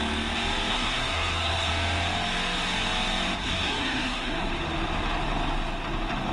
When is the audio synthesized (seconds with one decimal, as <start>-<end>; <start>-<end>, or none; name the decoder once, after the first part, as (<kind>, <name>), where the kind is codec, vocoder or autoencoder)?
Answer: 0.7-1.7 (codec, SNAC); 3.4-4.5